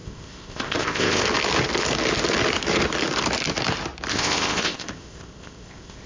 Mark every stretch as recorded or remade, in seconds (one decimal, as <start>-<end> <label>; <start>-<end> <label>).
0.0-1.2 remade; 1.2-4.1 recorded; 4.1-6.1 remade